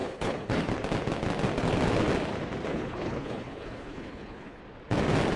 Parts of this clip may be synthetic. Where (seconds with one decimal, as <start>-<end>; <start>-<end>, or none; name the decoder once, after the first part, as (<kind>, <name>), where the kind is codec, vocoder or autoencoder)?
0.0-0.6 (codec, HILCodec); 2.7-4.6